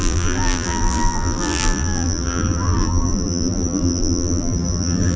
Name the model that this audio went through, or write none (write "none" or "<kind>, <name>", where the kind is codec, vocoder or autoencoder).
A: vocoder, BigVGAN v2